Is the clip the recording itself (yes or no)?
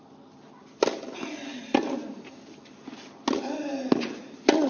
yes